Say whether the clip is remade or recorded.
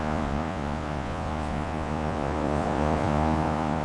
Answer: remade